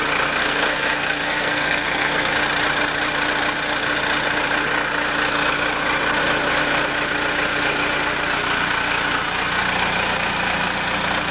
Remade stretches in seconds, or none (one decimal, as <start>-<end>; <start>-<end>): 0.4-2.3